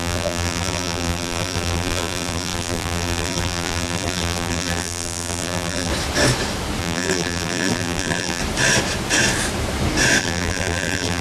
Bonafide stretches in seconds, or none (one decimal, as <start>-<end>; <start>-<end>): 5.9-6.8; 8.4-10.2